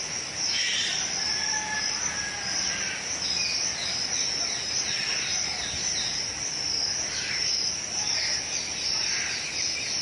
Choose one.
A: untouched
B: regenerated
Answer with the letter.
A